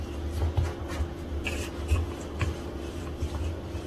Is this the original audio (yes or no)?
yes